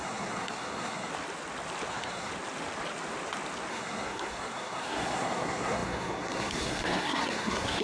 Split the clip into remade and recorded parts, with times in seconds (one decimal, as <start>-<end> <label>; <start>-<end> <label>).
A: 0.0-1.1 remade; 1.1-1.9 recorded; 1.9-2.3 remade; 2.3-3.7 recorded; 3.7-7.8 remade